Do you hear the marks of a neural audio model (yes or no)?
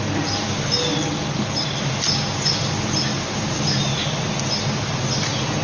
no